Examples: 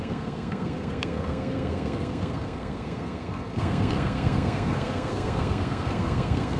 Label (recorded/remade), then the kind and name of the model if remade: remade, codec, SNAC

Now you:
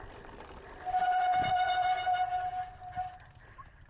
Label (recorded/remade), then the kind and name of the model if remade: recorded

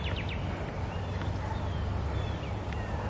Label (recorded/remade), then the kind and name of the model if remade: recorded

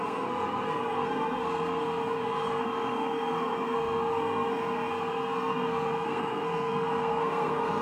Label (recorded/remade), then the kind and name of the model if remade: remade, codec, SNAC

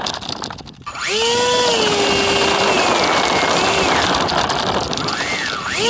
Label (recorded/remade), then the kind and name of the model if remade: recorded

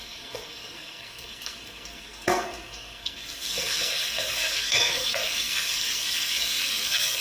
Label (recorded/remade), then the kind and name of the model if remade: remade, codec, SNAC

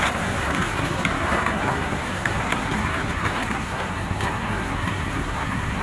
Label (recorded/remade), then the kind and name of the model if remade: remade, codec, SNAC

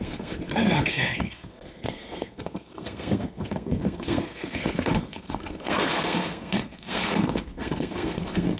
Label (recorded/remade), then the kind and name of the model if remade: remade, codec, SNAC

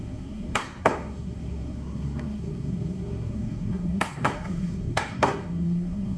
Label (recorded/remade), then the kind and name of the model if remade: remade, codec, SNAC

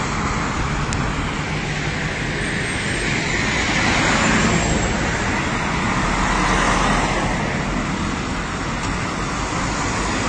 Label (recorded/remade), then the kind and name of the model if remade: recorded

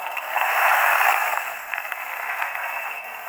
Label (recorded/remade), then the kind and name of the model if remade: remade, codec, SNAC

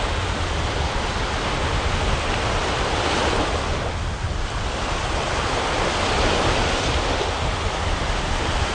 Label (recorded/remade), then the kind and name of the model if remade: recorded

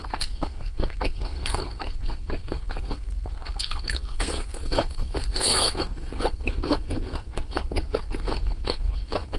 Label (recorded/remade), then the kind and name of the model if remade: remade, codec, SNAC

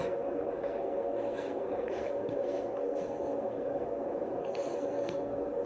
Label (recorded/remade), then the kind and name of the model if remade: remade, codec, SNAC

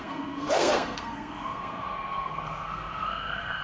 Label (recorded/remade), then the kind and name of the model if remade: remade, codec, SNAC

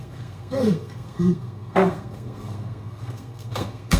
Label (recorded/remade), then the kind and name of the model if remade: remade, codec, SNAC